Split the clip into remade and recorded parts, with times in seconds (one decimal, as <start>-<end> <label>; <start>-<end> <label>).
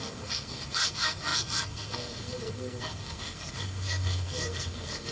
0.0-5.1 remade